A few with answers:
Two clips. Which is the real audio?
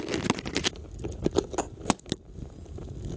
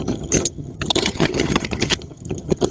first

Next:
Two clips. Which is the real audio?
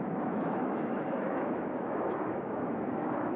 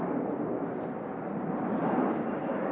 second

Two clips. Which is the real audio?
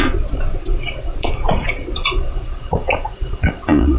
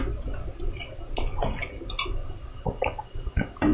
second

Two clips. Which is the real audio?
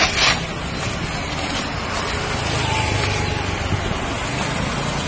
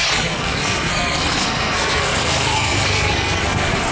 first